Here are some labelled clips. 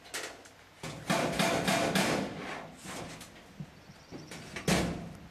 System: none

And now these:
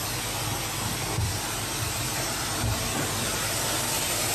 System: none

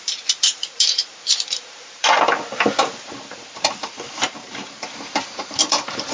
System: vocoder, BigVGAN v2